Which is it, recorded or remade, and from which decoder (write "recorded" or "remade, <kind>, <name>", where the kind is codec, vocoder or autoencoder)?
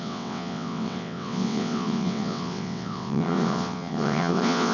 remade, vocoder, WaveNeXt